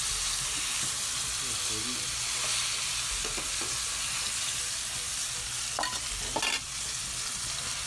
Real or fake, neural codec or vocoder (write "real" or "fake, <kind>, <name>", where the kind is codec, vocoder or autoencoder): real